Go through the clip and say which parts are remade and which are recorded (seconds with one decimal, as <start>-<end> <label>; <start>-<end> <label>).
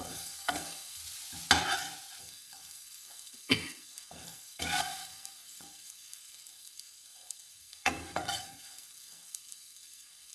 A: 0.0-1.0 remade; 1.0-2.2 recorded; 2.2-10.3 remade